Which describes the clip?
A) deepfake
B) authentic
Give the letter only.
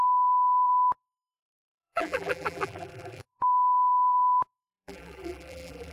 A